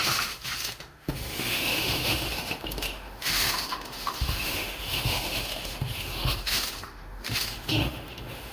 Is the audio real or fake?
fake